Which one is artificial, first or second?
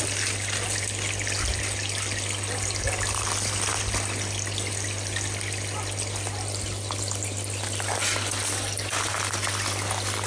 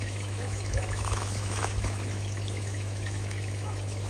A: second